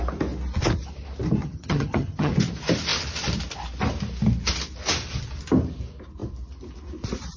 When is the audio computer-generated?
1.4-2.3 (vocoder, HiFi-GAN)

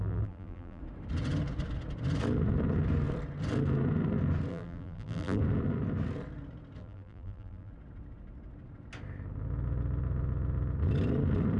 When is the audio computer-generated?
0.0-0.8 (vocoder, BigVGAN v2); 4.5-5.4; 6.8-7.7

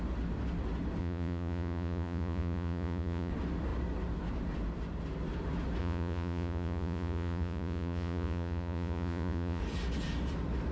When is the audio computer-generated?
1.0-3.3 (vocoder, Vocos); 5.8-9.6

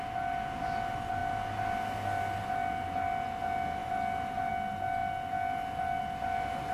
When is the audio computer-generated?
none

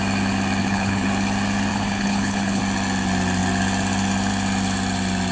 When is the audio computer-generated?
0.6-1.1 (codec, HILCodec); 1.7-2.6

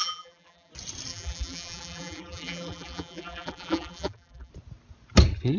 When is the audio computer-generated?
0.0-0.7 (vocoder, BigVGAN v2); 1.1-4.5

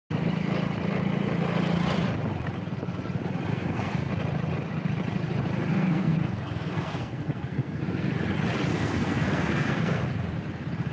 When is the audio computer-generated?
3.5-4.1 (codec, SNAC); 5.7-8.1; 8.7-10.0

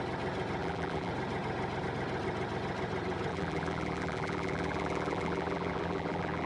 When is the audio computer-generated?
0.6-1.1 (vocoder, BigVGAN v2); 3.3-6.5